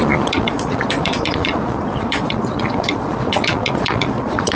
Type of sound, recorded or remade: remade